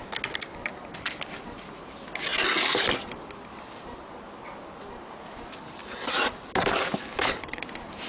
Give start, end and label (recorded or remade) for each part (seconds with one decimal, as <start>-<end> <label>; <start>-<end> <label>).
0.0-7.0 recorded; 7.0-7.6 remade; 7.6-8.1 recorded